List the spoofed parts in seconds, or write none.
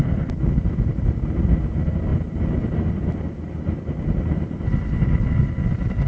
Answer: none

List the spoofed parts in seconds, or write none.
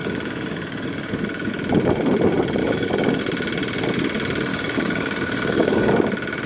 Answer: 0.0-1.5 (codec, DAC); 2.6-3.2; 4.5-5.9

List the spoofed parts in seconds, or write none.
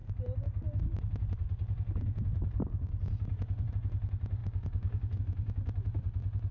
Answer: 4.4-5.2 (codec, DAC)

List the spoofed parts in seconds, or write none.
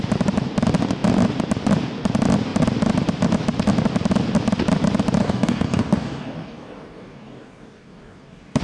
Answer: 5.2-8.6 (codec, DAC)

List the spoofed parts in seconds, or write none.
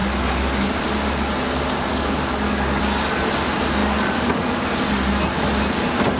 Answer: 0.0-0.8 (codec, DAC); 1.9-2.8; 3.8-4.4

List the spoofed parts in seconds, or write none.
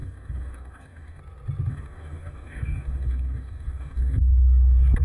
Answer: 0.0-1.2 (codec, DAC); 1.7-4.3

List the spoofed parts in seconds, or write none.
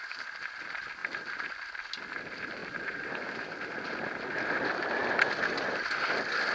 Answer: none